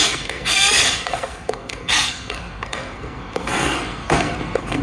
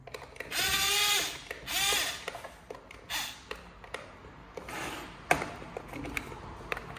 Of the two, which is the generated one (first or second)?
first